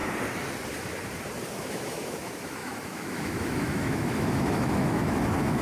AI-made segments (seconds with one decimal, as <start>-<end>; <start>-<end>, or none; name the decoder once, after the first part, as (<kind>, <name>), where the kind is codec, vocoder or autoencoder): 1.5-5.6 (autoencoder, DAC-VAE)